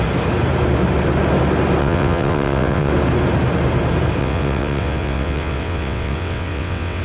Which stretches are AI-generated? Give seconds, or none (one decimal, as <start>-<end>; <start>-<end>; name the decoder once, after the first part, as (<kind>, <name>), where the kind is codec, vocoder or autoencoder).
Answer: 1.8-2.9 (vocoder, WaveNeXt); 4.2-7.0